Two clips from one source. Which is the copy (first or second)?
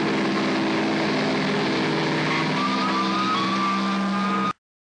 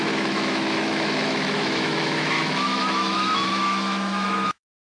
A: second